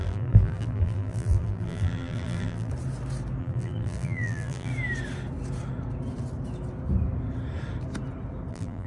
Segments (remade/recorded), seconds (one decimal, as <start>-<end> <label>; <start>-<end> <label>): 0.0-2.7 remade; 2.7-3.4 recorded; 3.4-4.7 remade; 4.7-8.5 recorded; 8.5-8.9 remade